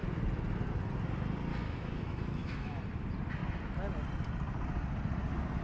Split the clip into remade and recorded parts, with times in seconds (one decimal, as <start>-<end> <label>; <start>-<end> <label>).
0.0-1.5 recorded; 1.5-2.8 remade; 2.8-5.6 recorded